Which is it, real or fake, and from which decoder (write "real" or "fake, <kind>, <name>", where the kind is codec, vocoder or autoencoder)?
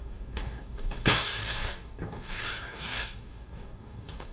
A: fake, codec, DAC